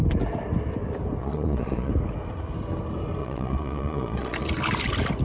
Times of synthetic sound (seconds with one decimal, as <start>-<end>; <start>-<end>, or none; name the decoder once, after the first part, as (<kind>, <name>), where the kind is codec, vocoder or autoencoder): 1.2-1.9 (vocoder, Vocos); 3.2-4.5